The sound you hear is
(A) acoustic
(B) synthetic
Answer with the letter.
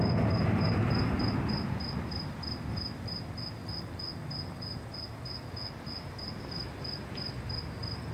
A